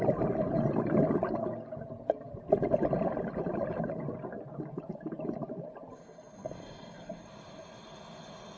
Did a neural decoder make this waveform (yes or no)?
no